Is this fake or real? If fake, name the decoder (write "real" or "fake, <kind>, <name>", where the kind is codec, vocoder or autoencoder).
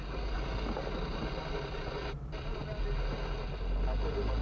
real